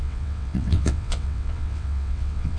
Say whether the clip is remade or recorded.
remade